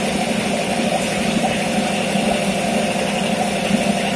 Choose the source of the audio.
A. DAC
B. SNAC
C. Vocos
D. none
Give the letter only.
D